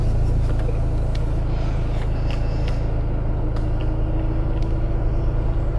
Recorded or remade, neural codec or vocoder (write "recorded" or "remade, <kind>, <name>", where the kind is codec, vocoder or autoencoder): recorded